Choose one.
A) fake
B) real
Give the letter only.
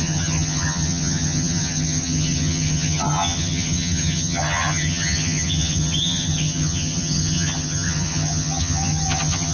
A